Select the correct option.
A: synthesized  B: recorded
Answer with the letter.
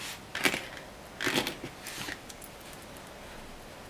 B